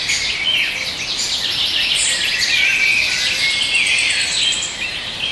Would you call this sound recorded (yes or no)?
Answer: yes